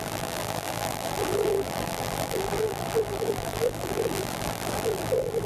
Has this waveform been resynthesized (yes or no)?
yes